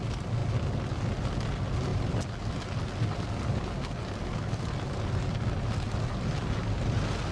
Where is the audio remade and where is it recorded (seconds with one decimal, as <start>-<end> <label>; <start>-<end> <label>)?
0.0-7.3 recorded